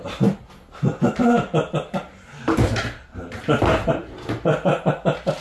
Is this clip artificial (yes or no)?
no